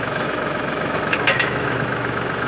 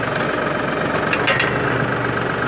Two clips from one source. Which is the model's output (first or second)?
first